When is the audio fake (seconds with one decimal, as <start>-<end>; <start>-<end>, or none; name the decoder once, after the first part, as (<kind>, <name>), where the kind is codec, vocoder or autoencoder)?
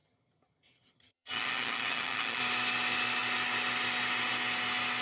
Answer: 0.0-2.4 (vocoder, HiFi-GAN)